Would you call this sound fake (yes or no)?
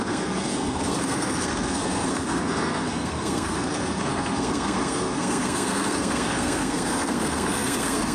yes